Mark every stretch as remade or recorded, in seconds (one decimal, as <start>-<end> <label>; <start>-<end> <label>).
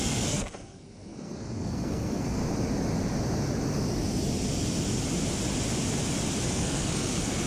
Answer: 0.0-2.4 remade; 2.4-6.5 recorded; 6.5-7.5 remade